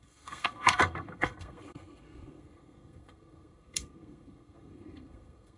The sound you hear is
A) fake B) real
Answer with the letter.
A